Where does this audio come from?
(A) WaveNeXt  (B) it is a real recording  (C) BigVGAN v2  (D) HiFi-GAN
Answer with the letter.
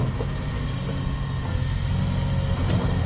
B